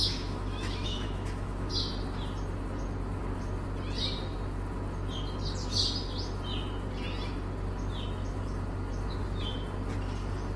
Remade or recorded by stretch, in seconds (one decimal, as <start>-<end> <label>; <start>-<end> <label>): 0.0-1.7 remade; 1.7-10.6 recorded